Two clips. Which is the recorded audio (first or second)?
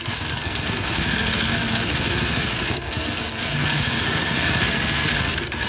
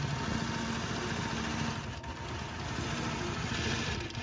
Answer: second